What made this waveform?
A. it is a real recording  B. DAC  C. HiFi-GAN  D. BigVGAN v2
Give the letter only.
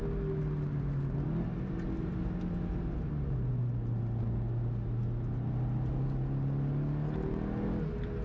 A